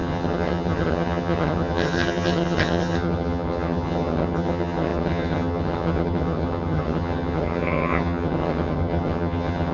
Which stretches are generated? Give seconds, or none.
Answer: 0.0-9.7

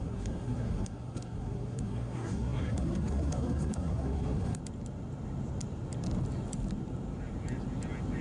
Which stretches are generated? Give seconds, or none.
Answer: 0.0-4.6

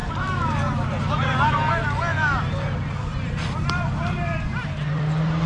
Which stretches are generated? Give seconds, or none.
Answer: 2.1-5.5

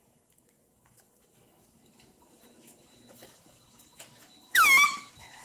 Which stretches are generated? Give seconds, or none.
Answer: 0.0-5.4

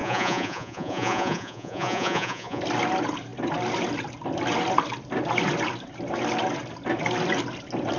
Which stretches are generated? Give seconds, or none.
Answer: 0.0-2.6

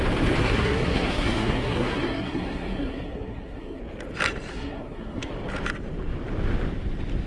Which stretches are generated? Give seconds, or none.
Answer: 0.4-3.8; 4.5-5.3